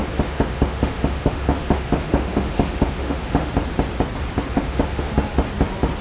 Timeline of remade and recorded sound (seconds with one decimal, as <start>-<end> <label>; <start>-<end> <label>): 0.0-3.5 remade; 3.5-4.5 recorded; 4.5-5.1 remade; 5.1-6.0 recorded